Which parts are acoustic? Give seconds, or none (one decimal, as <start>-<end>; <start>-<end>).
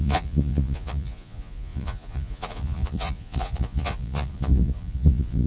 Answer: none